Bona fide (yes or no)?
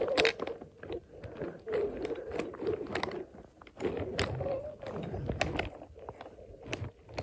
yes